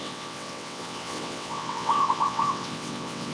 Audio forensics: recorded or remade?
remade